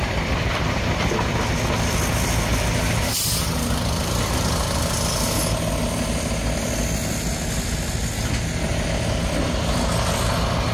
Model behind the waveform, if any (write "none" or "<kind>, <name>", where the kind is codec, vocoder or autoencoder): none